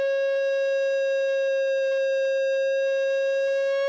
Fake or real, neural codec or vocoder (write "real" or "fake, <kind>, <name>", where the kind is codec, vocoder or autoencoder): real